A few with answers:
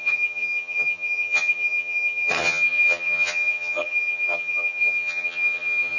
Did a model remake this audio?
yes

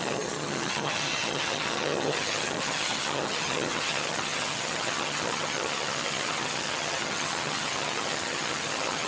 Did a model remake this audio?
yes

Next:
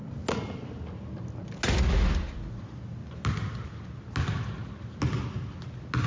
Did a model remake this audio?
no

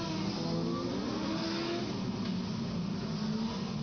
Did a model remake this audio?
no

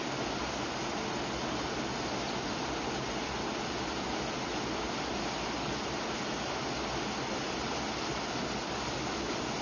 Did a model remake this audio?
no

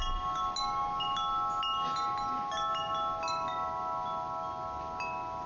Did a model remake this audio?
no